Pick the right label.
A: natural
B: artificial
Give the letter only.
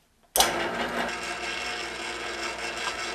A